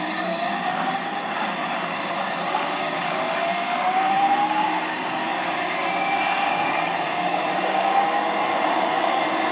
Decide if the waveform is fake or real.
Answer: fake